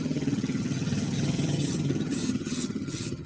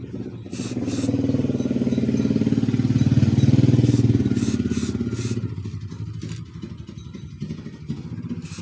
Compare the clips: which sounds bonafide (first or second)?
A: second